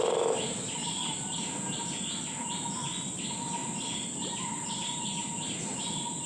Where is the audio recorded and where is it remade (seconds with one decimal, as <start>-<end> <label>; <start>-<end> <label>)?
0.0-0.8 recorded; 0.8-2.1 remade; 2.1-6.3 recorded